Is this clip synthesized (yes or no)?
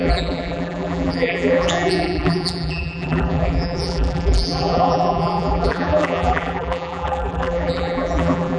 yes